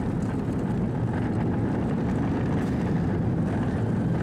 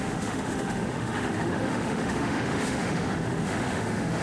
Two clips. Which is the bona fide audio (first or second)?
first